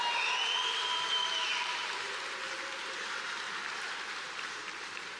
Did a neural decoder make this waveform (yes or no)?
yes